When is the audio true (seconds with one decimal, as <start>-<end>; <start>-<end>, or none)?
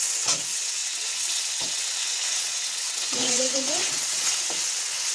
none